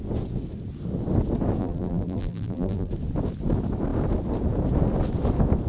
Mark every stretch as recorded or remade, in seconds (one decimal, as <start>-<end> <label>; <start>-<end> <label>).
0.0-1.6 recorded; 1.6-2.9 remade; 2.9-5.7 recorded